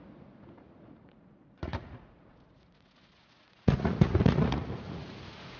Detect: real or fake fake